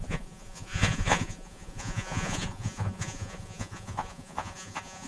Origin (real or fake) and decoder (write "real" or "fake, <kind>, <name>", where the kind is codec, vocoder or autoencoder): fake, vocoder, Vocos